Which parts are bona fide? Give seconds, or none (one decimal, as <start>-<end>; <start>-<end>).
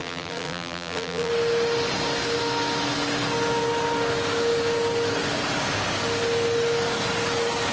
1.3-7.7